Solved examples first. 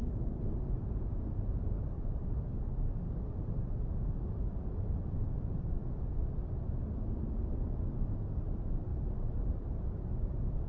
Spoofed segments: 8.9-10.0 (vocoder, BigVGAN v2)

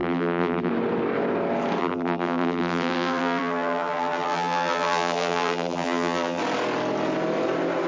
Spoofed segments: 0.0-0.7 (vocoder, BigVGAN v2); 1.8-6.4

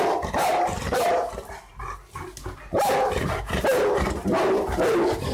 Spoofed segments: 0.5-1.7 (vocoder, BigVGAN v2); 2.7-3.7